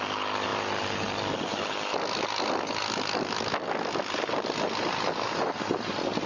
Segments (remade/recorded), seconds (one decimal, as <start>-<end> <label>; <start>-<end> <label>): 0.0-6.3 recorded